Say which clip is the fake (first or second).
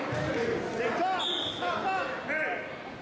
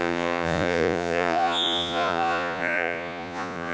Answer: second